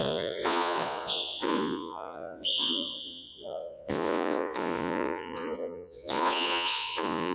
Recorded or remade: remade